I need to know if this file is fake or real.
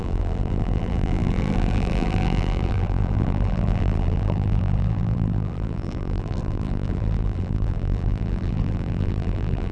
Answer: fake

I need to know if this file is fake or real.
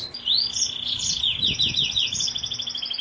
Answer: real